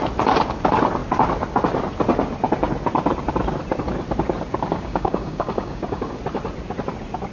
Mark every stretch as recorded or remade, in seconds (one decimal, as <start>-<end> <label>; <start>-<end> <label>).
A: 0.0-4.7 recorded; 4.7-6.2 remade; 6.2-7.3 recorded